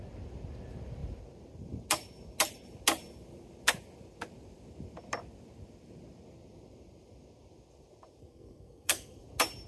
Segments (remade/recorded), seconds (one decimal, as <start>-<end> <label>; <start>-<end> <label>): 0.0-8.2 recorded; 8.2-9.2 remade; 9.2-9.7 recorded